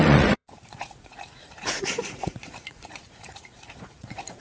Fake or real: fake